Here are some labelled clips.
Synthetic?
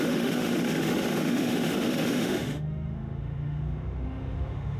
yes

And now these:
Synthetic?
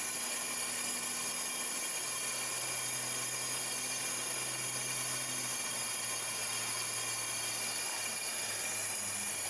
no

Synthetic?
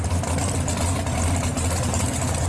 no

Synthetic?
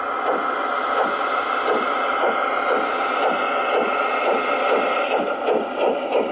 no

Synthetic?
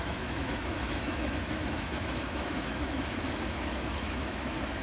yes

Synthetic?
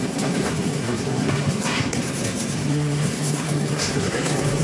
yes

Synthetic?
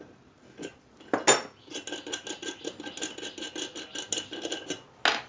no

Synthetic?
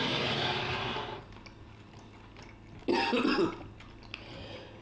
no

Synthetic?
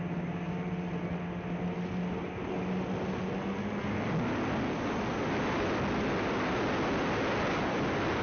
no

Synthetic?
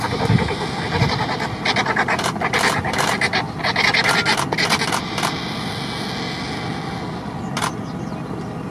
no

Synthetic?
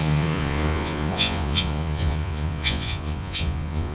yes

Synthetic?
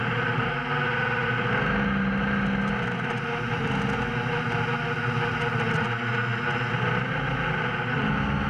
no